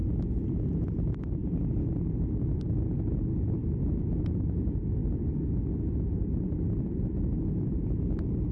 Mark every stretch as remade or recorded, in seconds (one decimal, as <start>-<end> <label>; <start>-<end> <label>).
0.0-8.5 recorded